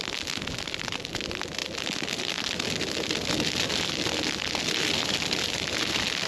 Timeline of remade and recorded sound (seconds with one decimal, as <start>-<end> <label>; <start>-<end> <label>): 0.0-6.3 recorded